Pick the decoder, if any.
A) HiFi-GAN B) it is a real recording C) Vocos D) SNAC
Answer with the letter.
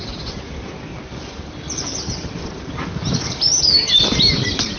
B